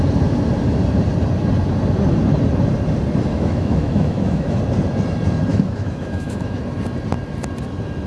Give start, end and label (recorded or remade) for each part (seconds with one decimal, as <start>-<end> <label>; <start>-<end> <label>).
0.0-3.3 recorded; 3.3-4.6 remade; 4.6-5.5 recorded; 5.5-6.6 remade; 6.6-8.1 recorded